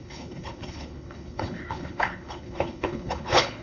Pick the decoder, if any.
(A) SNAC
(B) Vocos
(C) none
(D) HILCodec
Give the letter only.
D